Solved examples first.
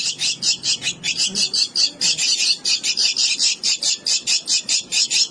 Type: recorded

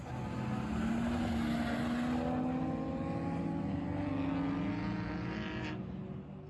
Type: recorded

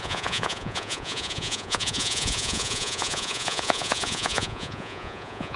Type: remade